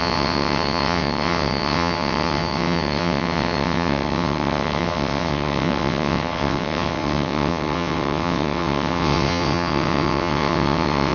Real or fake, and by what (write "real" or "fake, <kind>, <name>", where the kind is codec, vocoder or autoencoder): fake, vocoder, WaveNeXt